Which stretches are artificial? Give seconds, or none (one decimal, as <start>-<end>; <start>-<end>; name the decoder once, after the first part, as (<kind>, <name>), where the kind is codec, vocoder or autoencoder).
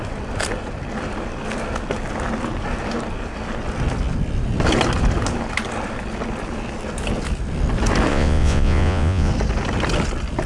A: 8.1-9.3 (vocoder, Vocos)